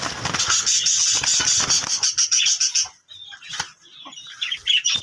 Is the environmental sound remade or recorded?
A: recorded